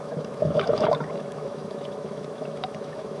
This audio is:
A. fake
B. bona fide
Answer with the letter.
A